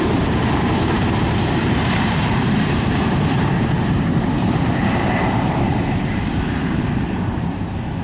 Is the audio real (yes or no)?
no